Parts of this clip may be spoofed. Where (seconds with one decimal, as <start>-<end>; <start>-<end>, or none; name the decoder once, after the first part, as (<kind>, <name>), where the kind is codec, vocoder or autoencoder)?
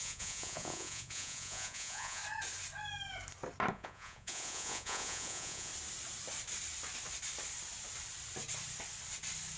0.0-2.2 (vocoder, Vocos); 3.7-5.7